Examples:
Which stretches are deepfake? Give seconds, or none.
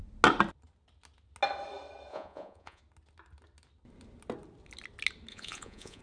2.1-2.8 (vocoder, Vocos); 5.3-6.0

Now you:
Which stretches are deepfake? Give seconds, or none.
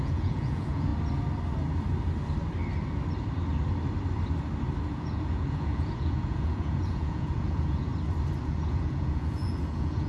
0.0-0.9 (vocoder, Vocos); 4.9-7.9; 8.4-10.1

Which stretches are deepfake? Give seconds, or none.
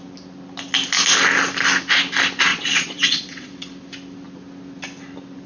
2.5-3.5 (vocoder, Vocos)